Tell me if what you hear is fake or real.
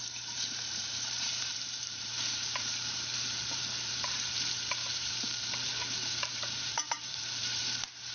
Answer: fake